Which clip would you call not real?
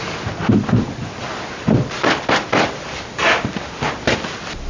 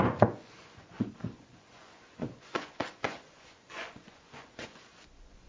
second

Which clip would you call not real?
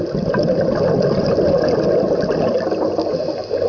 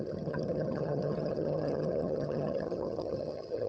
second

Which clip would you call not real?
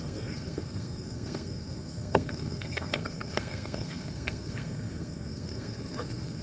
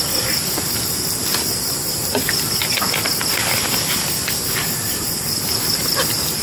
first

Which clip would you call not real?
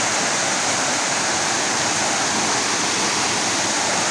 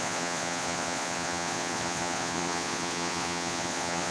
second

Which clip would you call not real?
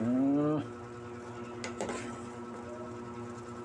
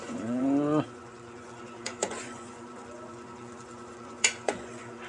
second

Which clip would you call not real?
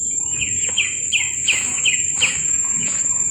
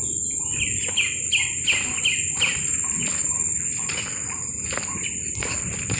first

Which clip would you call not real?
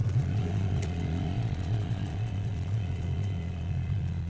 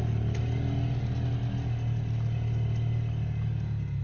first